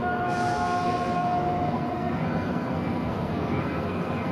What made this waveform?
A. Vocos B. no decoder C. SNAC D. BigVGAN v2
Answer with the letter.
C